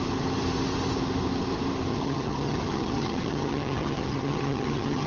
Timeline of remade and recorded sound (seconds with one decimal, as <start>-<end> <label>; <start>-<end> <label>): 0.0-1.9 recorded; 1.9-5.1 remade